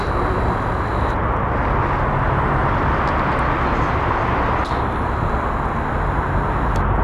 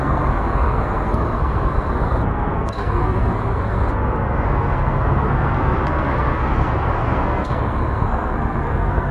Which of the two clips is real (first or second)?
first